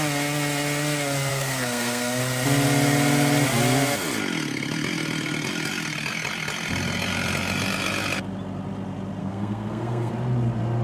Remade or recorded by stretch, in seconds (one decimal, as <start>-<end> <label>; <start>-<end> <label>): 0.0-1.3 recorded; 1.3-2.2 remade; 2.2-9.2 recorded; 9.2-10.1 remade; 10.1-10.8 recorded